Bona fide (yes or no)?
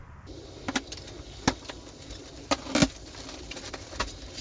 yes